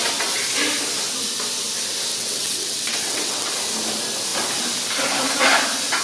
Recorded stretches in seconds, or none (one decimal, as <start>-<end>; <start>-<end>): 0.0-2.1; 3.5-6.0